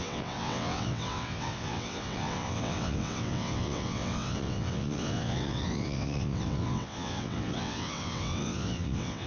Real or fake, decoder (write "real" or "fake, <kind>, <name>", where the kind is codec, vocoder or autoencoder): fake, vocoder, WaveNeXt